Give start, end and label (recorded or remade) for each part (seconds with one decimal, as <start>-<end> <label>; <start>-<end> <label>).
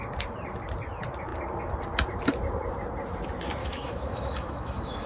0.0-3.6 recorded; 3.6-5.1 remade